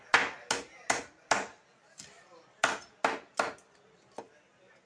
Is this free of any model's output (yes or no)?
yes